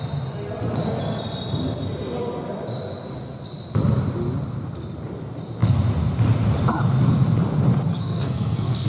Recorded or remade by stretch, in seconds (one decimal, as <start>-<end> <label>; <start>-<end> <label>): 0.0-7.9 recorded; 7.9-8.9 remade